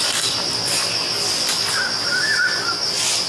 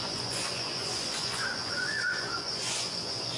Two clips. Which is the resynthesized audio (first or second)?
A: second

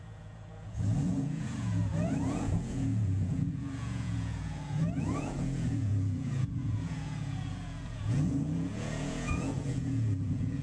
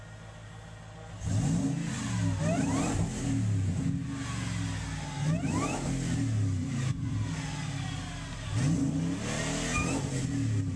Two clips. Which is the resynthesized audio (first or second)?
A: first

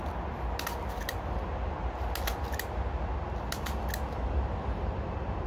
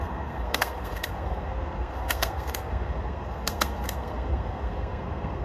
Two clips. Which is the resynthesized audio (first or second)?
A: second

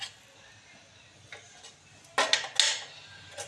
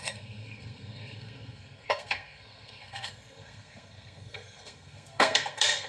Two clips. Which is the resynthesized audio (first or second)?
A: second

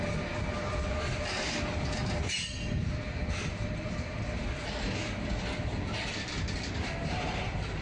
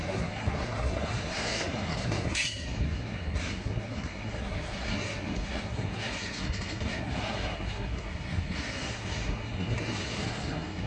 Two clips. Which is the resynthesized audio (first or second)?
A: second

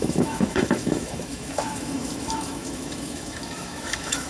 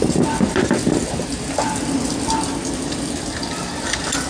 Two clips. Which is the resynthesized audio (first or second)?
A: first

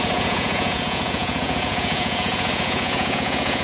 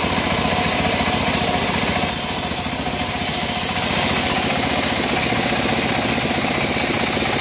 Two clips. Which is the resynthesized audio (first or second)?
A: first